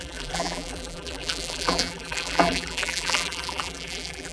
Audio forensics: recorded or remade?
remade